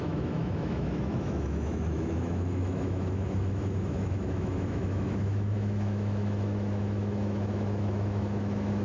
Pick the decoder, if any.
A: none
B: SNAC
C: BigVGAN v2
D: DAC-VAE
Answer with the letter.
D